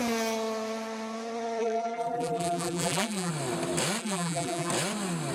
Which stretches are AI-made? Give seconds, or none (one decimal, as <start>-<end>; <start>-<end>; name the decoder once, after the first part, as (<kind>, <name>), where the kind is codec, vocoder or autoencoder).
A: 1.6-3.3 (vocoder, BigVGAN v2); 4.0-4.7